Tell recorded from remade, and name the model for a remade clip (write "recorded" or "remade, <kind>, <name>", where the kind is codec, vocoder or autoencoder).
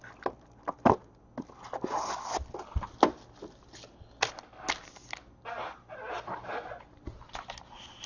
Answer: recorded